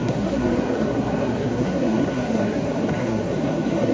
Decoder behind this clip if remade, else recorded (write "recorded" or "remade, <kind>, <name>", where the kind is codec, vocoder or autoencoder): remade, codec, SNAC